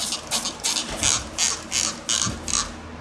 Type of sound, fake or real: real